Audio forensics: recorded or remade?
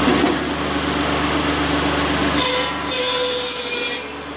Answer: recorded